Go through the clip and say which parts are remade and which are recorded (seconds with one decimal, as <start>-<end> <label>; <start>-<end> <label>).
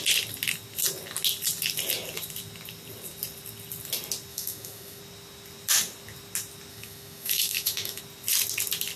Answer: 0.0-4.3 recorded; 4.3-5.0 remade; 5.0-6.7 recorded; 6.7-8.0 remade; 8.0-9.0 recorded